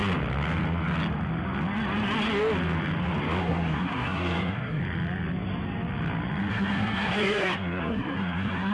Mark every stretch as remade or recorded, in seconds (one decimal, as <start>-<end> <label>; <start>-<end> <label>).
0.0-3.4 recorded; 3.4-4.8 remade; 4.8-6.5 recorded; 6.5-8.7 remade